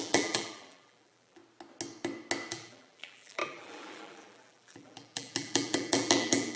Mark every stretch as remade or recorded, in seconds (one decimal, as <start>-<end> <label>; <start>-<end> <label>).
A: 0.0-1.4 remade; 1.4-2.5 recorded; 2.5-6.6 remade